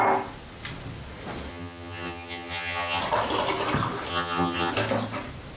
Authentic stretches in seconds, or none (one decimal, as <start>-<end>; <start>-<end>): 0.0-1.5; 3.0-4.1; 4.7-5.6